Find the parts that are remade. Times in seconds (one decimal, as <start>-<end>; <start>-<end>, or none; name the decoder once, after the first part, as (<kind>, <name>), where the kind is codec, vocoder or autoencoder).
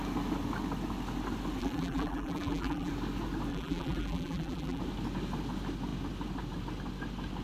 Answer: 1.6-2.9 (vocoder, BigVGAN v2); 3.5-4.8